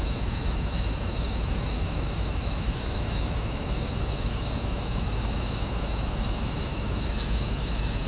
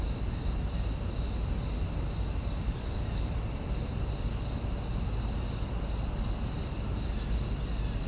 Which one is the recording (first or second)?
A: second